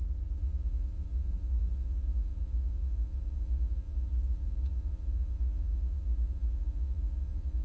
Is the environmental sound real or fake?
fake